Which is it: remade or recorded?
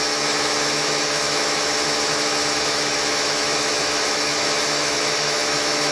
remade